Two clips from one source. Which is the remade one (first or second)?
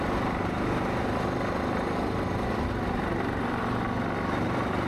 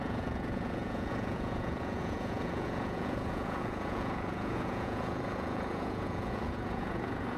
second